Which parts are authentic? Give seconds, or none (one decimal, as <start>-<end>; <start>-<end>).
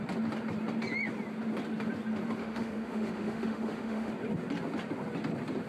0.0-2.4; 4.1-5.7